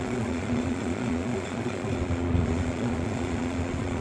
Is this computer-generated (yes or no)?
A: yes